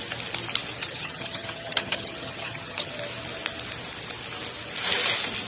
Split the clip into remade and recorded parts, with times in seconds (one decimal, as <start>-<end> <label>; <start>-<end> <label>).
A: 0.0-0.8 recorded; 0.8-2.9 remade; 2.9-5.5 recorded

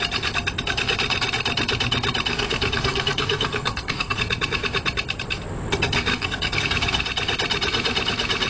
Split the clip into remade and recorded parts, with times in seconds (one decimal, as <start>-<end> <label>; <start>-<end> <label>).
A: 0.0-2.3 recorded; 2.3-4.2 remade; 4.2-6.1 recorded; 6.1-6.6 remade; 6.6-8.5 recorded

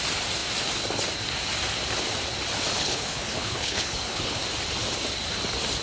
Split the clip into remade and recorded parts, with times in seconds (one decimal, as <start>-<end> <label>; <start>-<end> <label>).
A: 0.0-2.8 recorded; 2.8-4.4 remade; 4.4-5.8 recorded

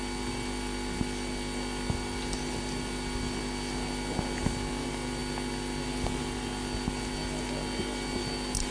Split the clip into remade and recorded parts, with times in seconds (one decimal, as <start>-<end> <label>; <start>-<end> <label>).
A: 0.0-8.7 recorded

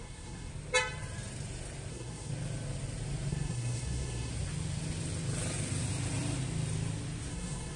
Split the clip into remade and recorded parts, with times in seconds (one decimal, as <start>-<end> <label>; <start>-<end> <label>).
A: 0.0-0.5 remade; 0.5-1.9 recorded; 1.9-2.3 remade; 2.3-3.3 recorded; 3.3-4.3 remade; 4.3-7.3 recorded; 7.3-7.8 remade

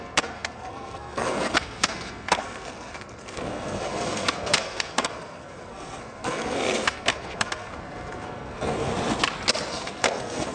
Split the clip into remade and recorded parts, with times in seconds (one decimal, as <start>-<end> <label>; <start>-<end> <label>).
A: 0.0-8.9 remade; 8.9-9.7 recorded; 9.7-10.5 remade

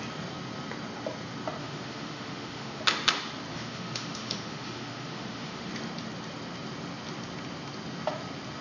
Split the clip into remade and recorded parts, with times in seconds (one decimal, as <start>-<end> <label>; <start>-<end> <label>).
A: 0.0-1.6 recorded; 1.6-2.8 remade; 2.8-3.5 recorded; 3.5-5.7 remade; 5.7-8.6 recorded